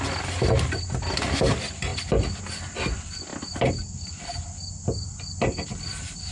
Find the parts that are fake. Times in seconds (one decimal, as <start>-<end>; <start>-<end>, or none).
none